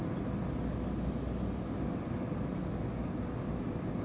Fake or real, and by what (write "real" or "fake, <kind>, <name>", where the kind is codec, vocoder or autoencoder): real